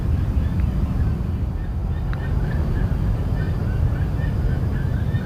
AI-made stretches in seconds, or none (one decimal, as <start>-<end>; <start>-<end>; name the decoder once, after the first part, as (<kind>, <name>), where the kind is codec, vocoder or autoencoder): 1.8-2.9 (vocoder, BigVGAN v2)